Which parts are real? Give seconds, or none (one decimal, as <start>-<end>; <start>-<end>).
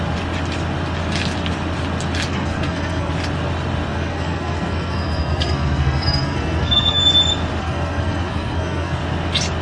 0.0-2.3; 3.1-3.9; 7.0-7.6; 9.0-9.6